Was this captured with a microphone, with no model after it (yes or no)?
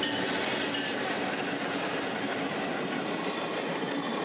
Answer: yes